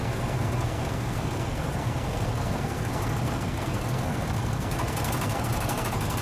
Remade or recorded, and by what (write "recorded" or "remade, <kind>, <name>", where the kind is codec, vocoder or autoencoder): remade, codec, SNAC